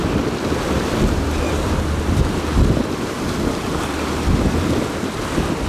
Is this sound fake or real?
fake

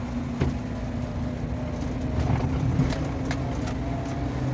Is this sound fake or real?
real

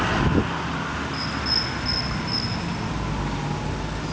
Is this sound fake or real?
real